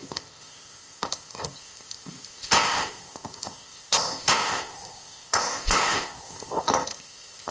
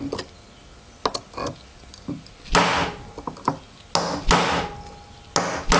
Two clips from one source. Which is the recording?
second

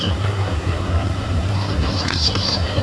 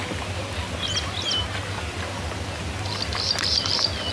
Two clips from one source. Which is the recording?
second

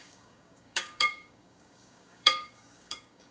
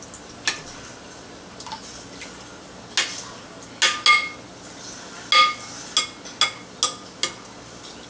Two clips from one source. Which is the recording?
second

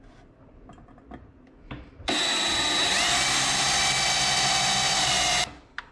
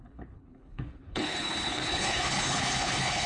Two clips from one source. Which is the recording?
first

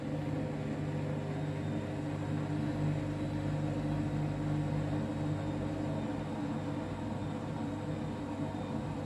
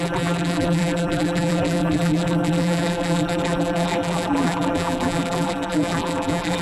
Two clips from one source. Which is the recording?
first